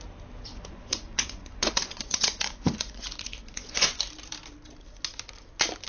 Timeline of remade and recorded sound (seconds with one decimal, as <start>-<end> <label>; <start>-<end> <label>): 0.0-0.5 recorded; 0.5-4.0 remade; 4.0-5.9 recorded